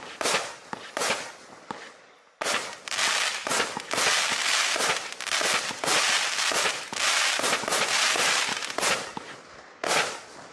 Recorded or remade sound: recorded